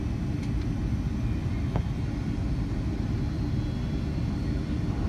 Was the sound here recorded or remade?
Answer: recorded